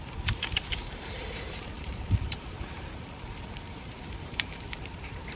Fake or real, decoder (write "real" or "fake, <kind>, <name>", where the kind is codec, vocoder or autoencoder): fake, vocoder, BigVGAN v2